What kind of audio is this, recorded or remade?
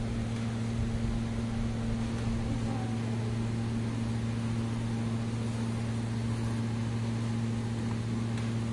recorded